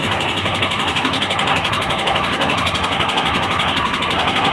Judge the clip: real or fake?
fake